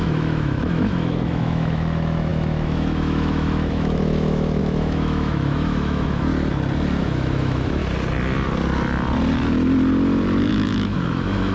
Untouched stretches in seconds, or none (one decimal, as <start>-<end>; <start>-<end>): 6.3-7.0; 7.8-10.5